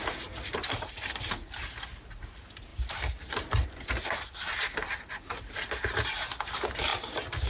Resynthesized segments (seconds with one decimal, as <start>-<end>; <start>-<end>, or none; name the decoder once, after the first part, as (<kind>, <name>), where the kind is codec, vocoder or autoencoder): none